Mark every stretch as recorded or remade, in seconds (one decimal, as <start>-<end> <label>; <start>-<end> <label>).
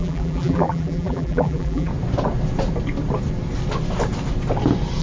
0.0-1.9 remade; 1.9-5.0 recorded